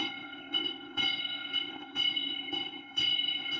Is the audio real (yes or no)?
no